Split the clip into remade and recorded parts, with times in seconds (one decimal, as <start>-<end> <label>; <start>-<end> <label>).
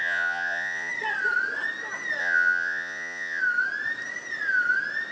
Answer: 0.0-0.9 remade; 0.9-2.2 recorded; 2.2-3.4 remade; 3.4-5.1 recorded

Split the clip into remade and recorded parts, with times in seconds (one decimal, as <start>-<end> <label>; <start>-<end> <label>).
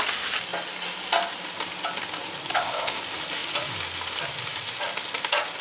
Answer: 0.0-2.5 recorded; 2.5-3.0 remade; 3.0-5.6 recorded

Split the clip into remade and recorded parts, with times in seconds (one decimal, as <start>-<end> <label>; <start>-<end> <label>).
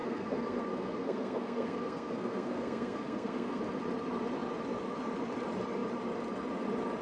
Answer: 0.0-3.6 remade; 3.6-7.0 recorded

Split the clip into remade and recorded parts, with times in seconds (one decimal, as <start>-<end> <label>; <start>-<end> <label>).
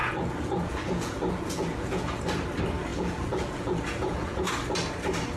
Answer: 0.0-2.2 remade; 2.2-2.9 recorded; 2.9-4.5 remade; 4.5-5.4 recorded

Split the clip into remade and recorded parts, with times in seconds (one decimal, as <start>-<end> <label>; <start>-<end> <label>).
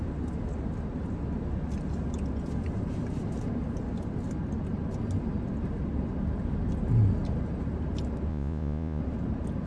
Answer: 0.0-8.3 recorded; 8.3-9.0 remade; 9.0-9.7 recorded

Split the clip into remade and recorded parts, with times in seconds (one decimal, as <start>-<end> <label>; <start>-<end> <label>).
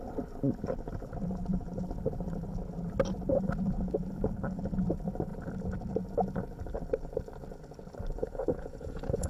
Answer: 0.0-8.2 recorded; 8.2-9.3 remade